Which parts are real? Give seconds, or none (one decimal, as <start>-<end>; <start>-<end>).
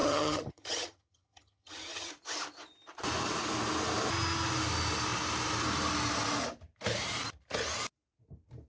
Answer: 2.1-8.7